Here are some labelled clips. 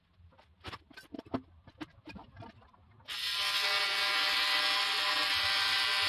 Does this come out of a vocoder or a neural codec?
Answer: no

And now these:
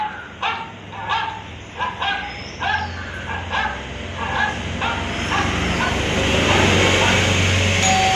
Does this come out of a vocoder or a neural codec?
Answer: no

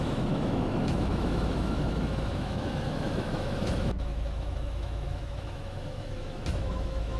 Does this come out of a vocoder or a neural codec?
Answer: yes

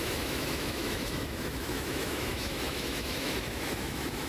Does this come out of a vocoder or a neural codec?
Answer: yes